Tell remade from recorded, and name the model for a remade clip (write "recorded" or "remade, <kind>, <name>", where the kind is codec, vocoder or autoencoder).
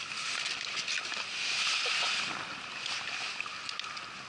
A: recorded